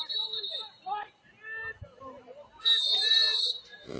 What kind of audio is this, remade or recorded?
remade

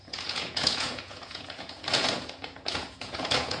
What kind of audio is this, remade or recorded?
remade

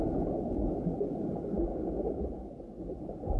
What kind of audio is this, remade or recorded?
recorded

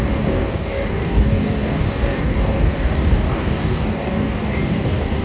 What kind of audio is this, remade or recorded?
remade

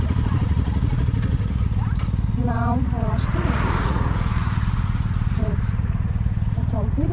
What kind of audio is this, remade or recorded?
remade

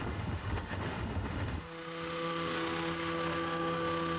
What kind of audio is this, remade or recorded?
remade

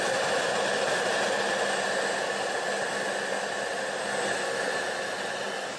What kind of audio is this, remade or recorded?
recorded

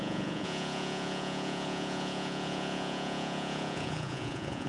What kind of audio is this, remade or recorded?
remade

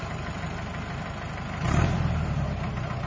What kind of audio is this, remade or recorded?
recorded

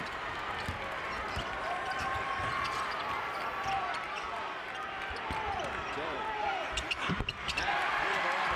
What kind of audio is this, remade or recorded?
remade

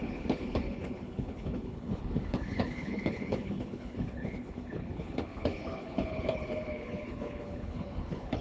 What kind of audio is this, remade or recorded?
remade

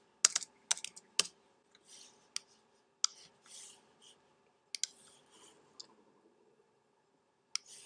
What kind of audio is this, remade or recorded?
recorded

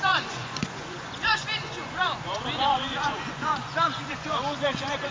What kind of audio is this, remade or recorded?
remade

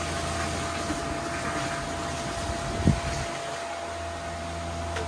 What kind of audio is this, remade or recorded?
recorded